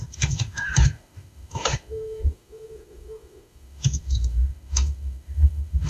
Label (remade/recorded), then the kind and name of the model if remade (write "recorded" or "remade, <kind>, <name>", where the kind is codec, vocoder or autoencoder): remade, autoencoder, DAC-VAE